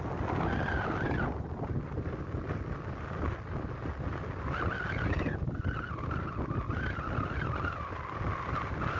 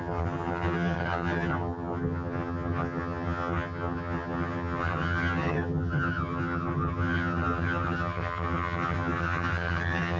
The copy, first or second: second